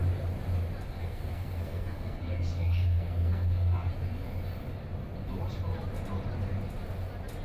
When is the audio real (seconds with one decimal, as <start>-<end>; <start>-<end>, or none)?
0.0-1.0; 3.9-7.4